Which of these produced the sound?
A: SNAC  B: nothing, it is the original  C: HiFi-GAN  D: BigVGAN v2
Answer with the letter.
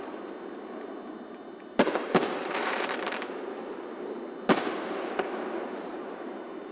D